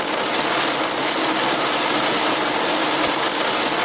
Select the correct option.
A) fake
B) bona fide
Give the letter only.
B